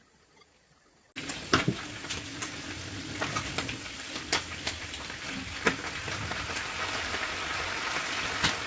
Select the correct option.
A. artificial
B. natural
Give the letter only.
B